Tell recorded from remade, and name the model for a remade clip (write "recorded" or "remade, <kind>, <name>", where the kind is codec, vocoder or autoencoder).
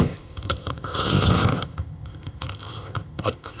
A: remade, codec, ZipCodec